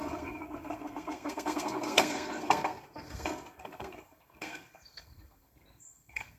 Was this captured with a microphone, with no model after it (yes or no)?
no